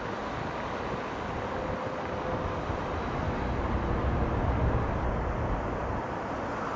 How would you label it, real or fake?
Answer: real